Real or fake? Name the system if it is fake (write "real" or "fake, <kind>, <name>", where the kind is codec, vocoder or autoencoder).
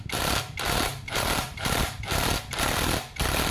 fake, vocoder, BigVGAN v2